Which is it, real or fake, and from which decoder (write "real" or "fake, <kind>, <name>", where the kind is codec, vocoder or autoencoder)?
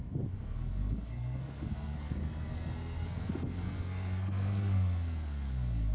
fake, codec, SNAC